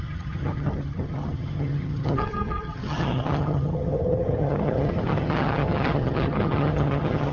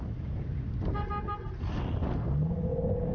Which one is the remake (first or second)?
first